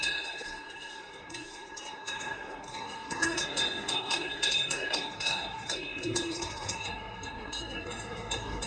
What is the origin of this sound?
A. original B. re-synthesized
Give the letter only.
B